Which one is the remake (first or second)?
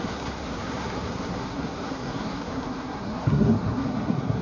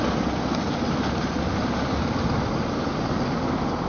first